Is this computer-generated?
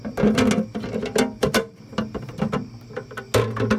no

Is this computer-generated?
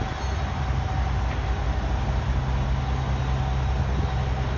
no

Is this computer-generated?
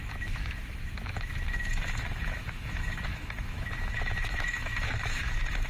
yes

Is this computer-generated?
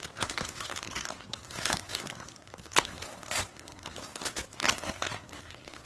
yes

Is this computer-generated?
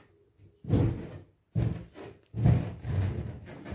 no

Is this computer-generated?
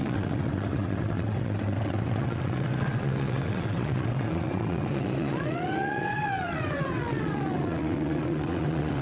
yes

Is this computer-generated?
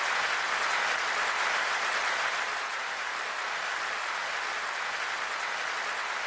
no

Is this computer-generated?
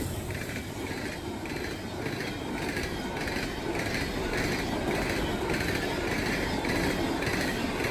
no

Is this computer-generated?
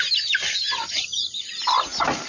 no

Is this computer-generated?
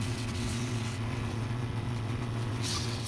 yes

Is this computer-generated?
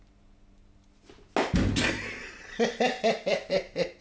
no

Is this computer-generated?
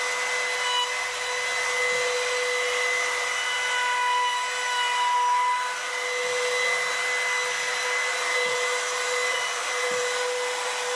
no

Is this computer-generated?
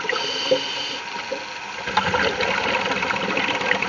no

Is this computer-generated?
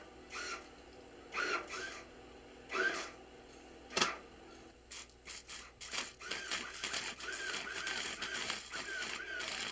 no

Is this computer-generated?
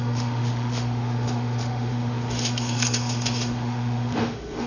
yes